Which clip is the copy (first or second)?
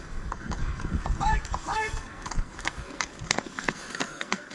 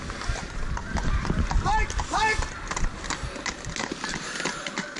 first